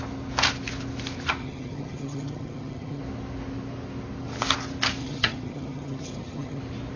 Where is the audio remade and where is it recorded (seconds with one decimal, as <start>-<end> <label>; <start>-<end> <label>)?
0.0-1.4 recorded; 1.4-3.0 remade; 3.0-5.0 recorded; 5.0-6.6 remade; 6.6-7.0 recorded

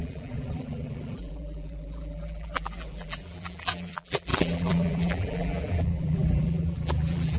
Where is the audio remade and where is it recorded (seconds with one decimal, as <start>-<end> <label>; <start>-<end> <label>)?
0.0-7.4 remade

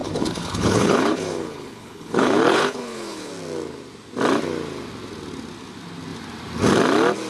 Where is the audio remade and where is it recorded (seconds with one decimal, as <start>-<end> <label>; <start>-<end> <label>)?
0.0-3.3 remade; 3.3-7.3 recorded

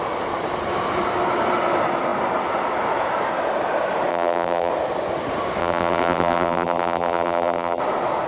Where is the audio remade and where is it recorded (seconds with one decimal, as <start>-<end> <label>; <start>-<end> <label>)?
0.0-4.1 recorded; 4.1-4.7 remade; 4.7-5.6 recorded; 5.6-7.8 remade; 7.8-8.3 recorded